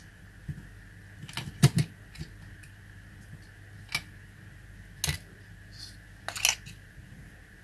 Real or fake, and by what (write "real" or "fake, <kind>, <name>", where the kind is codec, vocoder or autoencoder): real